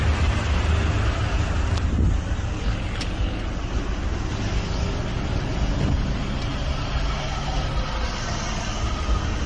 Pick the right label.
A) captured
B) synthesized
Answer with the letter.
A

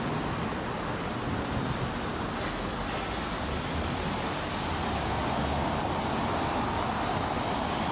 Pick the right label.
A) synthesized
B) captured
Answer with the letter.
B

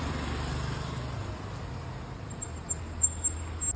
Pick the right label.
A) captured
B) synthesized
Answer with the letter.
A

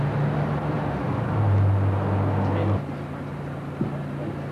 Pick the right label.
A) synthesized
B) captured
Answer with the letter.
B